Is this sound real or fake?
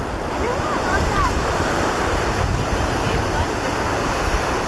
fake